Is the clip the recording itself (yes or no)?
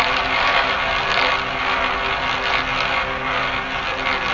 yes